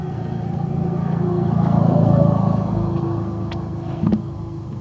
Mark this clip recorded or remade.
remade